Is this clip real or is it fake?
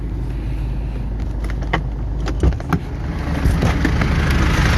real